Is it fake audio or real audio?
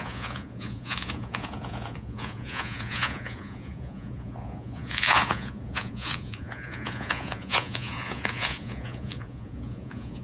fake